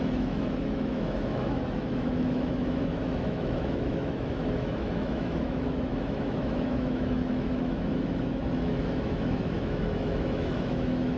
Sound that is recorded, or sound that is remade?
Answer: remade